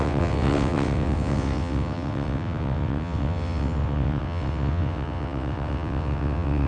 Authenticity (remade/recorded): remade